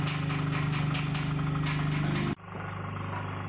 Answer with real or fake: real